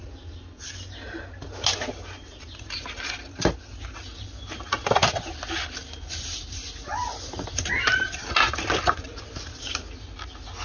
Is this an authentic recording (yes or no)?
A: yes